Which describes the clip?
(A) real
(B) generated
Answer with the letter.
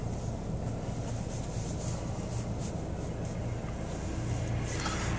A